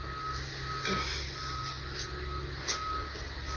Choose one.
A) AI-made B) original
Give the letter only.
B